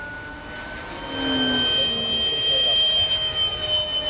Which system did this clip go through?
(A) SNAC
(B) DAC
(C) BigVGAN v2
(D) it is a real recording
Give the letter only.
D